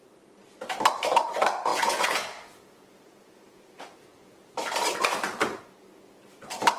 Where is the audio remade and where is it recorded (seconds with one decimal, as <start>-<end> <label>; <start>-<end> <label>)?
0.0-1.7 recorded; 1.7-4.5 remade; 4.5-6.8 recorded